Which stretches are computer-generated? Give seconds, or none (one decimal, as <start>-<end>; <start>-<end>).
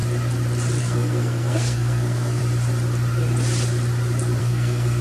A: 0.8-2.4; 4.4-5.0